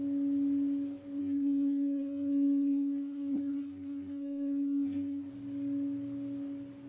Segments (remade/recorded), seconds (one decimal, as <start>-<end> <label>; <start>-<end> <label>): 0.0-1.2 recorded; 1.2-5.3 remade; 5.3-6.9 recorded